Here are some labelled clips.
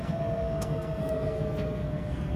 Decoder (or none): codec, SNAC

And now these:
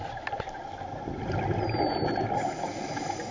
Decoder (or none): none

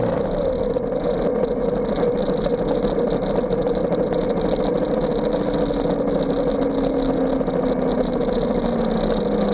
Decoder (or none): none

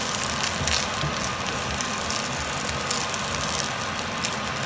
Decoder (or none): none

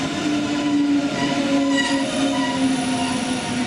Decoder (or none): none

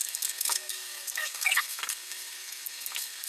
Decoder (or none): codec, SNAC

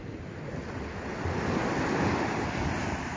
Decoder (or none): none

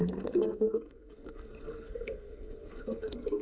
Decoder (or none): codec, SNAC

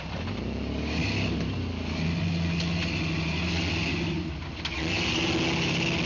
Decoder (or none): none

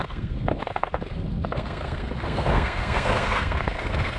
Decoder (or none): codec, SNAC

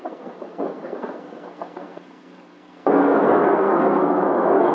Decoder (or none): codec, SNAC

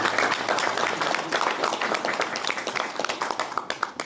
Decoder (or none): none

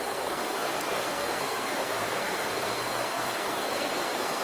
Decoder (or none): codec, SNAC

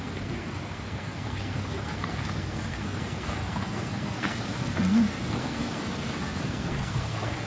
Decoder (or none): codec, SNAC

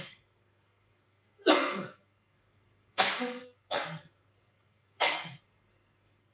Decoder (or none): codec, SNAC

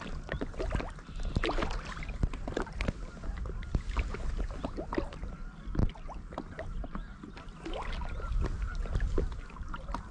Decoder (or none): none